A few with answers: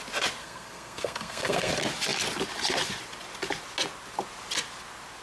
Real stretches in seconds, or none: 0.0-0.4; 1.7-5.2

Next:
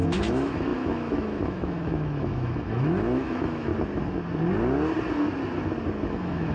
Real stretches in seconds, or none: 3.7-6.1